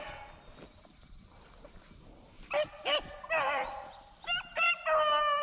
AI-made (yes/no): no